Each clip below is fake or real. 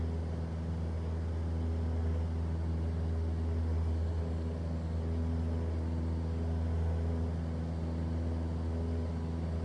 real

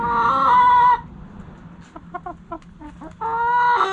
real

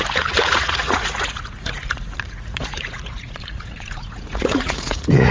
fake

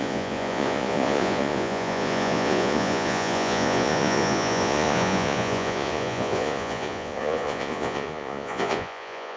fake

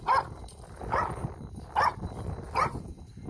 real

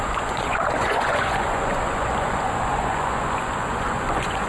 fake